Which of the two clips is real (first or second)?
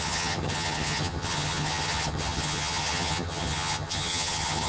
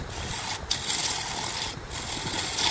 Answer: second